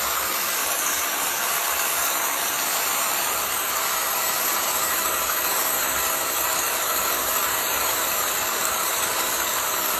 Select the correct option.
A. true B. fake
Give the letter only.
B